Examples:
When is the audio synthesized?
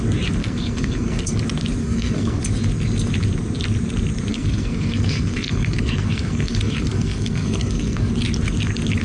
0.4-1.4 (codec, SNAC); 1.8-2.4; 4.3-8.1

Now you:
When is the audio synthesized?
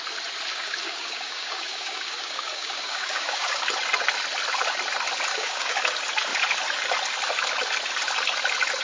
0.5-3.6 (codec, DAC); 5.3-5.8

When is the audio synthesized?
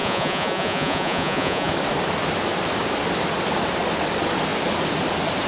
0.0-1.7 (vocoder, Vocos)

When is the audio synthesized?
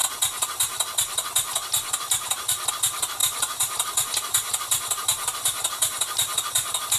3.2-7.0 (vocoder, BigVGAN v2)